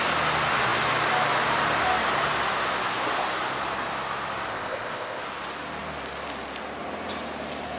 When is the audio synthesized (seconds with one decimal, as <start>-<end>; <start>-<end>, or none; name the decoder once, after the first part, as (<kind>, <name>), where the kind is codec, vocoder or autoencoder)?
4.5-5.2 (codec, ZipCodec)

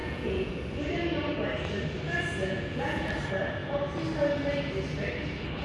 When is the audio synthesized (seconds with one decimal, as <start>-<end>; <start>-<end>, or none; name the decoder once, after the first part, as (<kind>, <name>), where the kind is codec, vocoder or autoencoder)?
0.0-0.5 (vocoder, Vocos); 2.4-3.1

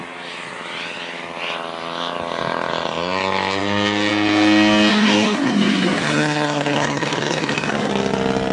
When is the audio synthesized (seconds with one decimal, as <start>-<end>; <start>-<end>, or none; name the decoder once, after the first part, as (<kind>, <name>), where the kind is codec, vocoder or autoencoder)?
4.9-7.9 (codec, SNAC)

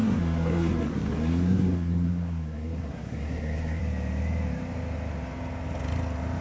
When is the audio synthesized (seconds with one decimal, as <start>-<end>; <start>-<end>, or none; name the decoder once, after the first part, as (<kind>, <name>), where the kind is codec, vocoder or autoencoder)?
0.0-3.8 (codec, SNAC)

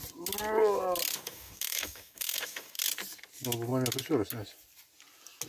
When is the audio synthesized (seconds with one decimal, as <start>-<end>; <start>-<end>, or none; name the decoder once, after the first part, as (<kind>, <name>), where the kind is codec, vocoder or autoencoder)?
1.1-2.8 (codec, DAC)

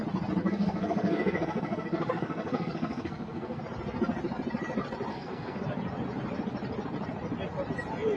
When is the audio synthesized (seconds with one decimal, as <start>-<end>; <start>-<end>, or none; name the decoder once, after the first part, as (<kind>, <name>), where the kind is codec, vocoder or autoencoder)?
0.4-3.6 (codec, SNAC); 5.1-5.6